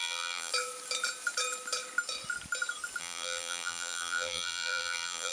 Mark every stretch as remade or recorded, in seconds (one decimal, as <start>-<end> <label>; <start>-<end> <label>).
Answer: 0.0-0.5 remade; 0.5-3.0 recorded; 3.0-5.3 remade

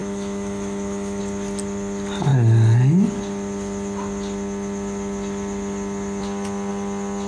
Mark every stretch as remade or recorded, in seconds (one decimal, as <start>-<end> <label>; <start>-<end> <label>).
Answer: 0.0-1.2 remade; 1.2-7.3 recorded